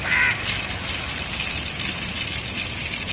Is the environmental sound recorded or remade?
recorded